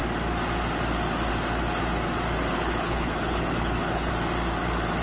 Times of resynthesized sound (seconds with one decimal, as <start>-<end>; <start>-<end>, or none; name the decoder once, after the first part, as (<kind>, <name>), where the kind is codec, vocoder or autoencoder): 2.5-4.1 (codec, HILCodec)